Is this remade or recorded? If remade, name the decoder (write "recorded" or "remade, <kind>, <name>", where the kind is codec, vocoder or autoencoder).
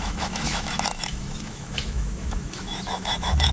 remade, autoencoder, DAC-VAE